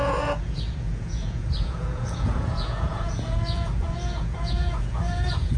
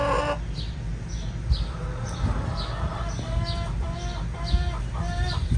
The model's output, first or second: first